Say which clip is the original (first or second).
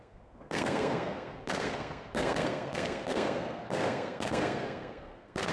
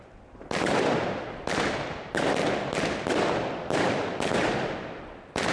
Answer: second